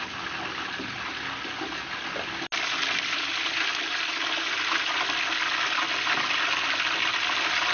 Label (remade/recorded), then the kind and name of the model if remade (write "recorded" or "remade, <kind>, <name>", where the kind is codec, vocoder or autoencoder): recorded